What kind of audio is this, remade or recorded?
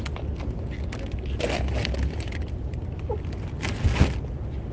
recorded